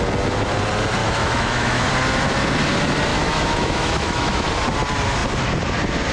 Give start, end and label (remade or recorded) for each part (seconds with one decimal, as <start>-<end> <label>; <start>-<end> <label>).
0.0-1.0 recorded; 1.0-1.9 remade; 1.9-3.1 recorded; 3.1-4.5 remade; 4.5-6.1 recorded